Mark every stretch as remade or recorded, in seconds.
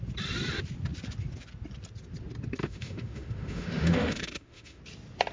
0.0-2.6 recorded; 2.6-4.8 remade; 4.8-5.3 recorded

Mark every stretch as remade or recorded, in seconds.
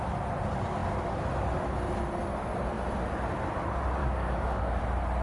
0.0-4.0 recorded; 4.0-4.8 remade; 4.8-5.2 recorded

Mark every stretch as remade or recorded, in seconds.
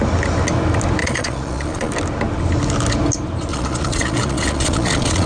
0.0-1.0 recorded; 1.0-1.9 remade; 1.9-3.5 recorded; 3.5-5.3 remade